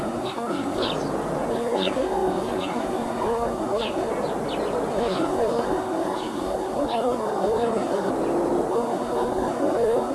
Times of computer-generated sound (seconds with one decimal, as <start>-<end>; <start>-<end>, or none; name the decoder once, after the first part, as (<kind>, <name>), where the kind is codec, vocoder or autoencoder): 0.0-0.9 (codec, SNAC); 1.5-4.1; 4.9-8.1; 8.7-10.1